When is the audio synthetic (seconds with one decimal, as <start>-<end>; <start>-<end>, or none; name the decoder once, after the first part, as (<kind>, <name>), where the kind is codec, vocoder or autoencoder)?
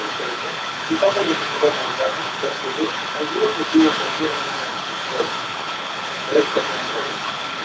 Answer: 0.0-3.0 (codec, HILCodec); 3.7-7.6